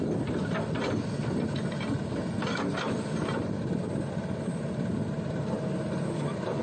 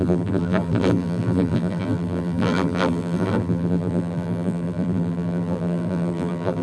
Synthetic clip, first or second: second